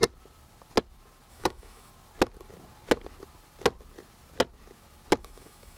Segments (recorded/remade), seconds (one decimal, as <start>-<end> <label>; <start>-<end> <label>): 0.0-1.3 recorded; 1.3-1.9 remade; 1.9-5.2 recorded; 5.2-5.8 remade